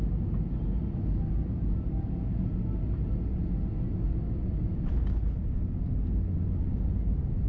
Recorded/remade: recorded